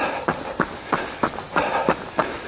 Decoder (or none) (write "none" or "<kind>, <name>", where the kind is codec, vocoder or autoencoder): none